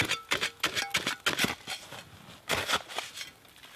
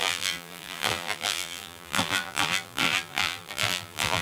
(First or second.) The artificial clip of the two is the second